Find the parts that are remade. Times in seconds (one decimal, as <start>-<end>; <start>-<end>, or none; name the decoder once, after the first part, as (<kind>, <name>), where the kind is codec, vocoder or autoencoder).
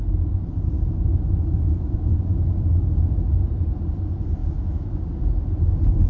1.1-2.1 (autoencoder, DAC-VAE); 4.4-5.0